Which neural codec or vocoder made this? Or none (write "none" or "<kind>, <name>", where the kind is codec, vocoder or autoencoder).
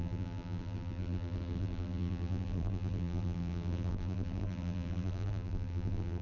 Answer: vocoder, BigVGAN v2